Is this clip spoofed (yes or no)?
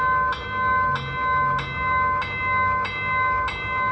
no